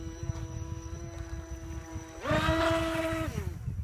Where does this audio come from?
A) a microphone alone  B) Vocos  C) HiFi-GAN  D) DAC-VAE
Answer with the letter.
A